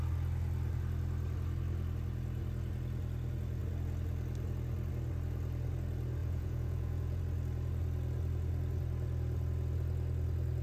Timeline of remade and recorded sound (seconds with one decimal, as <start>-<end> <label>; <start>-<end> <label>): 0.0-6.2 recorded; 6.2-7.2 remade; 7.2-10.6 recorded